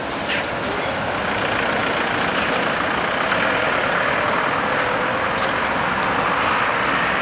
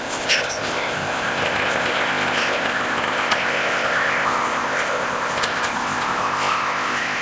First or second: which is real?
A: first